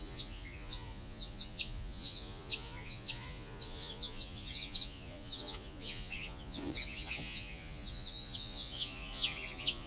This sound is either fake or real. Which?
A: fake